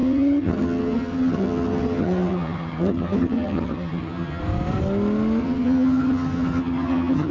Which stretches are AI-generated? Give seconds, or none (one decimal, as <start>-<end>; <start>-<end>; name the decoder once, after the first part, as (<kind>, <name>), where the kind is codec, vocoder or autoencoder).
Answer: 0.0-4.4 (vocoder, HiFi-GAN); 5.4-7.3